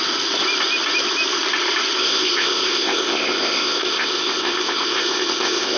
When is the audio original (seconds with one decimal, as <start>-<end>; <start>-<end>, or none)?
0.0-2.0